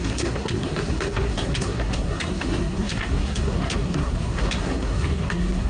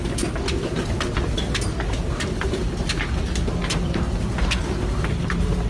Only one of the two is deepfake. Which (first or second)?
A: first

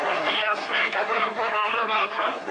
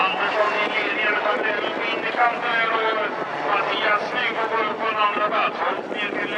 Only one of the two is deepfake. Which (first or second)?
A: first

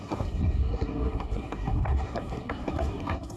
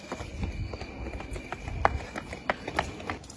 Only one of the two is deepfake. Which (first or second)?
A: first